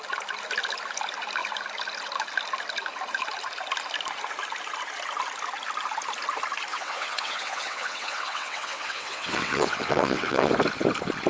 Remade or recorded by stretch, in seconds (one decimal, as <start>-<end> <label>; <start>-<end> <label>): 0.0-6.7 recorded; 6.7-10.5 remade; 10.5-11.3 recorded